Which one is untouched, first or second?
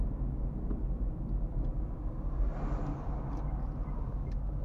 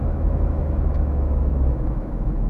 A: first